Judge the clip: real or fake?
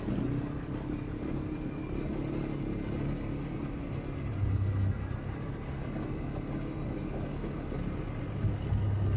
real